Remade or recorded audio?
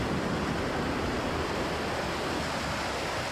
recorded